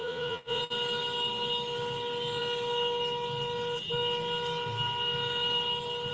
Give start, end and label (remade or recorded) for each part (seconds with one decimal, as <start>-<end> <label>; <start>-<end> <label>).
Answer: 0.0-0.6 remade; 0.6-6.1 recorded